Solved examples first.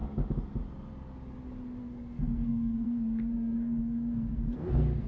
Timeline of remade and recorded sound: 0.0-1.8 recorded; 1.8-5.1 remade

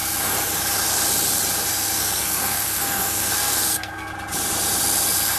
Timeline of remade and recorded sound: 0.0-1.7 recorded; 1.7-4.1 remade; 4.1-5.4 recorded

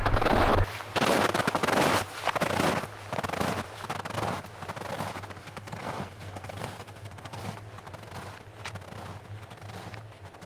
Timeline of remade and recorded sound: 0.0-5.4 recorded; 5.4-7.4 remade; 7.4-10.5 recorded

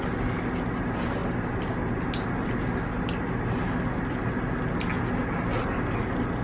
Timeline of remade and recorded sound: 0.0-6.4 recorded

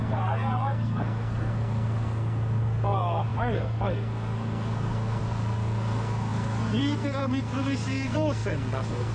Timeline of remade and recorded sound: 0.0-9.1 remade